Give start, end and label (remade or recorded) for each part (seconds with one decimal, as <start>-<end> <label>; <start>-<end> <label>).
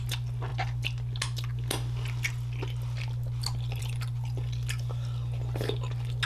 0.0-6.3 recorded